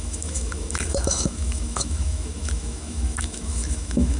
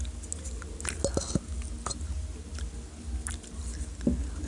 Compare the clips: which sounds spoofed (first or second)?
first